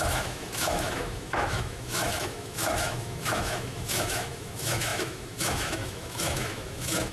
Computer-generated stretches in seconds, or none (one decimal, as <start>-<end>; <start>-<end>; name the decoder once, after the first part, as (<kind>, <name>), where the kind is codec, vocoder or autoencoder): 0.0-7.1 (autoencoder, DAC-VAE)